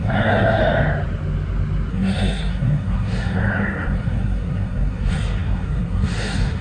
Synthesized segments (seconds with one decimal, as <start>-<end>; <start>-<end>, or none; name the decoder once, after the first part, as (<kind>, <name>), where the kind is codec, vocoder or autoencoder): 0.0-0.6 (codec, SNAC); 1.9-6.6